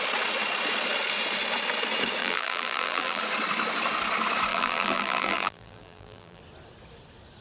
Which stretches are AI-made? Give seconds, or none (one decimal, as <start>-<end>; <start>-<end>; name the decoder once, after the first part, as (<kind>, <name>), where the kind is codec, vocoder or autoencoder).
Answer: 2.2-3.2 (vocoder, BigVGAN v2); 4.5-6.4